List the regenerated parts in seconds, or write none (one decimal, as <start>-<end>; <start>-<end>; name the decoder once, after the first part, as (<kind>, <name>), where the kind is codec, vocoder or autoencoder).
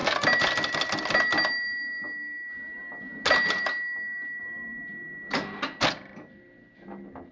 none